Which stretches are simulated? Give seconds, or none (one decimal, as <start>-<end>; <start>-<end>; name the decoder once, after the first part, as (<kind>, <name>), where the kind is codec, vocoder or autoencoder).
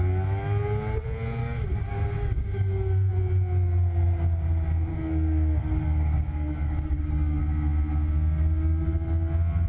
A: 1.4-3.1 (codec, DAC); 4.9-7.4